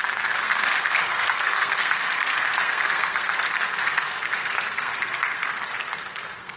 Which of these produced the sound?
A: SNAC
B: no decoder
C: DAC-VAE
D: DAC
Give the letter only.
A